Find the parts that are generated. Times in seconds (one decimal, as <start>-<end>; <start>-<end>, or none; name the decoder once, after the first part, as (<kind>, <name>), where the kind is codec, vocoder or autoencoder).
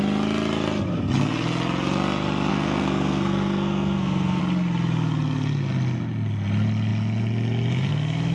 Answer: 2.5-4.4 (codec, SNAC)